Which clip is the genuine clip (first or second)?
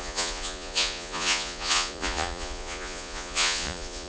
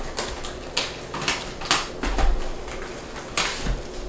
second